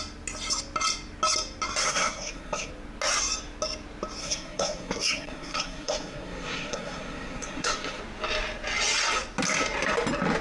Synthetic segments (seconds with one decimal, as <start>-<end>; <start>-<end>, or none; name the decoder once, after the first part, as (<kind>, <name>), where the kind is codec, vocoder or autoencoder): 1.8-2.7 (codec, SNAC); 4.2-8.0